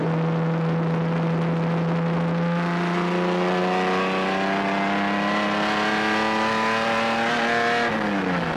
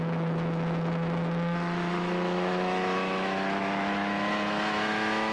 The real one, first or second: first